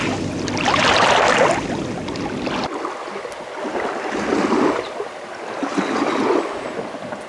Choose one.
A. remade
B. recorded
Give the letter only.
B